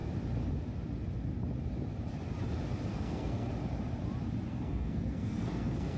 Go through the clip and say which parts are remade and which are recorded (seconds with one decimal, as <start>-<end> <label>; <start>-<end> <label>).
0.0-2.9 recorded; 2.9-3.5 remade; 3.5-4.5 recorded; 4.5-6.0 remade